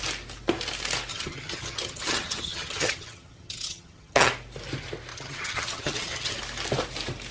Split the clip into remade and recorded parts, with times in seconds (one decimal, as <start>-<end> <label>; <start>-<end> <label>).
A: 0.0-1.1 recorded; 1.1-4.3 remade; 4.3-5.1 recorded; 5.1-6.4 remade; 6.4-7.3 recorded